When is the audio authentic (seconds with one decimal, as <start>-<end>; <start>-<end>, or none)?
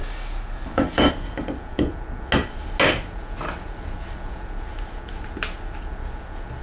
1.1-6.6